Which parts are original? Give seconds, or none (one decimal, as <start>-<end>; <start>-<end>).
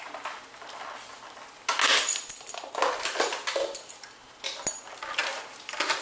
0.0-6.0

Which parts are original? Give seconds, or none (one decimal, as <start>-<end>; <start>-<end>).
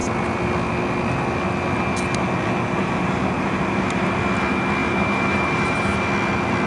0.0-2.8; 4.2-4.8; 6.1-6.7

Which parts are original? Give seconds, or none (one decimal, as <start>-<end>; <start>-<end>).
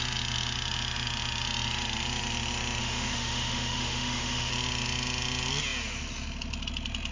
0.0-2.8; 4.5-7.1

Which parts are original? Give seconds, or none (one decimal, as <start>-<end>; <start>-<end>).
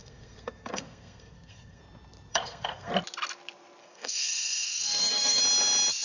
1.8-2.3; 2.9-3.8; 5.4-6.0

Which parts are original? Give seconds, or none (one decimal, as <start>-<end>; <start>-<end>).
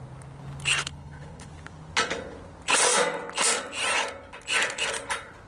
0.0-0.8; 1.5-5.5